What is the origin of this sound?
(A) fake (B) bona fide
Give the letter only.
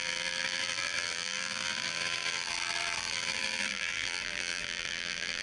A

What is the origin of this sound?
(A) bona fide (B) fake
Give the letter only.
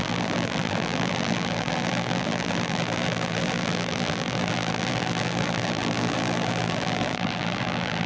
B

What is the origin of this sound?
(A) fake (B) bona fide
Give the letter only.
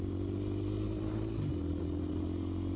B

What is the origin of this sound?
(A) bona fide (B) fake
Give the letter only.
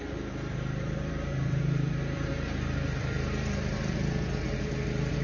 B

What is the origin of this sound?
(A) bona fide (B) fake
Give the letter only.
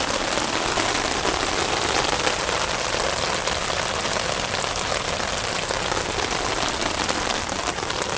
A